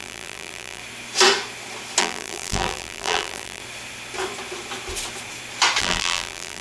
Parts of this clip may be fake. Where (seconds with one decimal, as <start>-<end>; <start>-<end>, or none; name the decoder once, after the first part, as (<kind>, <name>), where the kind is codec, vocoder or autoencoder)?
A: 0.0-0.8 (vocoder, BigVGAN v2); 2.0-3.6; 5.8-6.6